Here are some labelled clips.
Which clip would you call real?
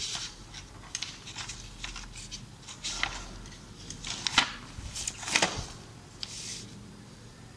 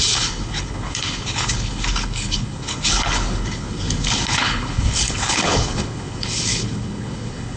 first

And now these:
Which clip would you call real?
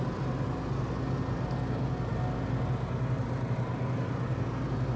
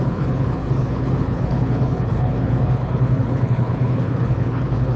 first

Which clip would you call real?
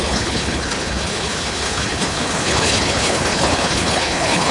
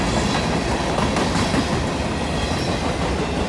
second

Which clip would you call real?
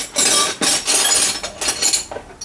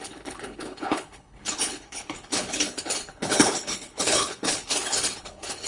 first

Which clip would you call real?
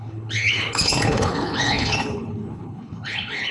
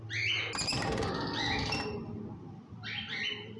second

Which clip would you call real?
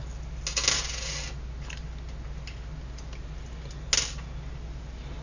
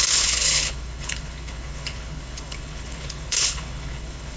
first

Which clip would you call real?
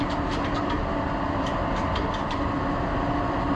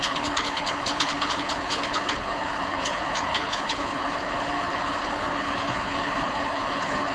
first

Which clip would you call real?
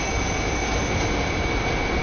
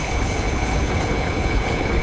first